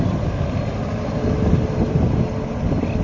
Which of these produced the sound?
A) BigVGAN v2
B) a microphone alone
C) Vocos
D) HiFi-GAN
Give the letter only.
B